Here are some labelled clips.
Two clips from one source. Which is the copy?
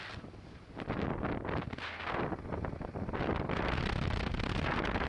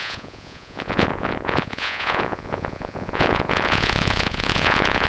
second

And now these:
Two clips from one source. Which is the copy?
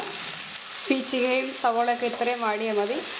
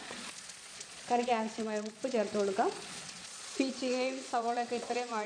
second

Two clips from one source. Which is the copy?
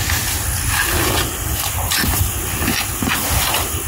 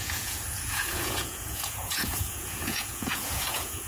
second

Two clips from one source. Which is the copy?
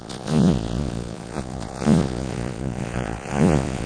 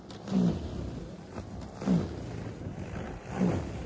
first